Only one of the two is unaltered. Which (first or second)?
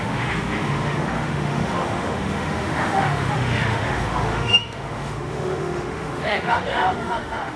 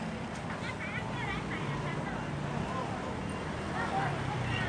second